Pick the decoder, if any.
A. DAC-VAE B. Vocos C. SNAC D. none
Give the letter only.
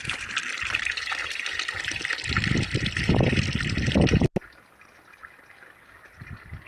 D